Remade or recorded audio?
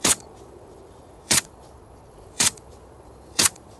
remade